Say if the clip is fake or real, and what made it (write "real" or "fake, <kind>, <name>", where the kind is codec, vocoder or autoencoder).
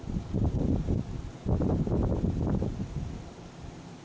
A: real